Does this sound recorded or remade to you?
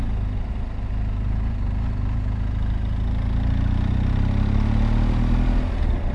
recorded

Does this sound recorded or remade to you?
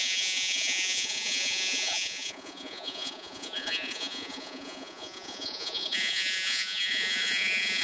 remade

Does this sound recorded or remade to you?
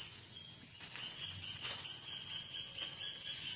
remade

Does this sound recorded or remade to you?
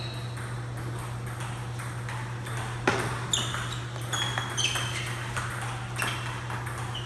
recorded